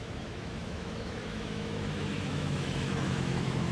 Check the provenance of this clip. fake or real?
fake